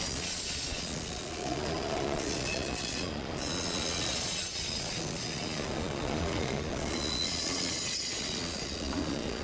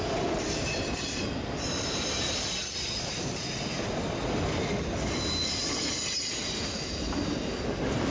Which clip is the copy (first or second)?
first